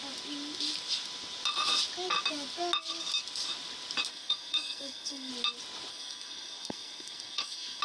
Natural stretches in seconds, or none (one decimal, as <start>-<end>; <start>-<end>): 0.0-4.1; 5.3-5.9